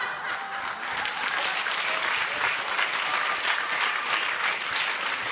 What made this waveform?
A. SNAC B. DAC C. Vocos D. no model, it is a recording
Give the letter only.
D